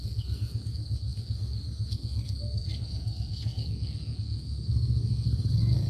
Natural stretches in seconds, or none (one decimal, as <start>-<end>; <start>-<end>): none